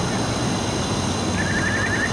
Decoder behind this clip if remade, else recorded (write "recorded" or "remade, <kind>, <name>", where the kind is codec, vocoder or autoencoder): recorded